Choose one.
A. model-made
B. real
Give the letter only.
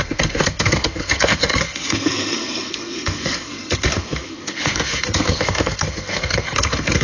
A